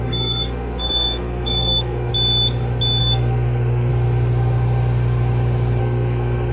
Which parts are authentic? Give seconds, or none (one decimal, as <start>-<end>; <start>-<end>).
2.1-3.0; 3.9-5.8